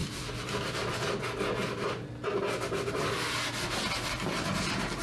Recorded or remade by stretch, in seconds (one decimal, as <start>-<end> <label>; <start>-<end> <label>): 0.0-5.0 recorded